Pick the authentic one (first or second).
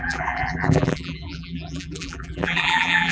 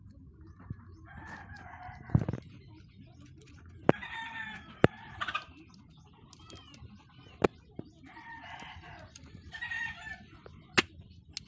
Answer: second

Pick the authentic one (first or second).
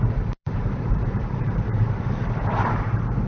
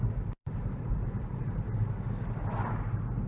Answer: second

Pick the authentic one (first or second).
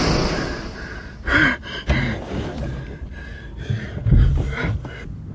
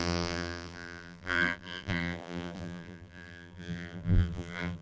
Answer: first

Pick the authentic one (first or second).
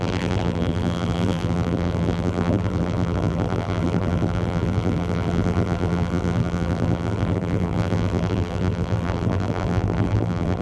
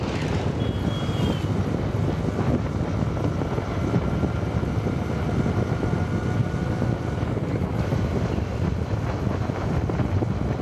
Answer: second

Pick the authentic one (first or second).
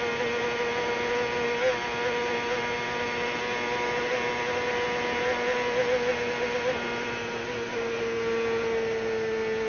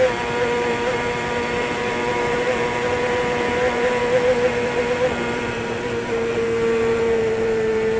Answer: first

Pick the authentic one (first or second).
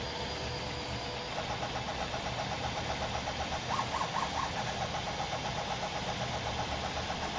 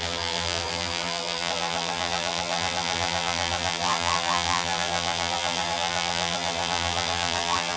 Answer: first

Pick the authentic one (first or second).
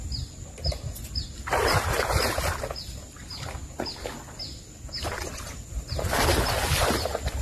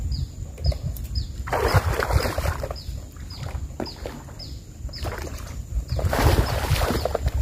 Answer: first